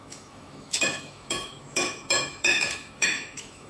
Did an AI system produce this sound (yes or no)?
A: yes